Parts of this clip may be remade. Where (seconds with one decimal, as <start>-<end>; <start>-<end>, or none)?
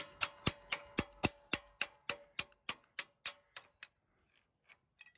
none